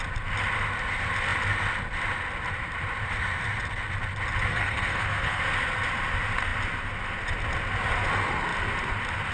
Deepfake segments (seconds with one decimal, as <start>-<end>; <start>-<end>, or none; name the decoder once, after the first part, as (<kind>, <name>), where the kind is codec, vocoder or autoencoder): 4.5-5.4 (codec, SNAC)